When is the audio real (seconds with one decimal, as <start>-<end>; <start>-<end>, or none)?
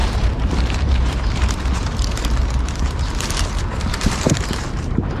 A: none